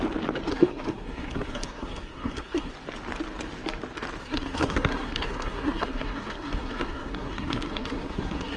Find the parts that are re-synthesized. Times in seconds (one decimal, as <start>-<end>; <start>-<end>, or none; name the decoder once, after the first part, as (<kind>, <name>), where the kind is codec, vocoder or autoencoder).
0.5-2.7 (codec, SNAC); 4.2-8.6